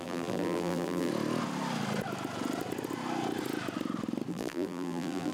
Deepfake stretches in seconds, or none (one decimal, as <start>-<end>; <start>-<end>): 0.0-1.1; 4.3-5.3

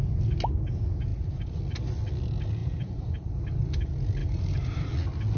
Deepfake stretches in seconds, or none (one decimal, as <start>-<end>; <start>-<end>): 1.1-1.6; 2.6-3.4; 4.2-4.9